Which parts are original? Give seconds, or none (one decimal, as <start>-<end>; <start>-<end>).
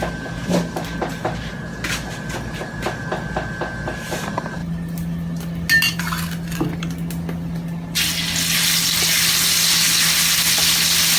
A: 0.0-11.2